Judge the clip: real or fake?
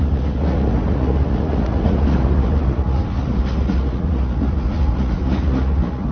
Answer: fake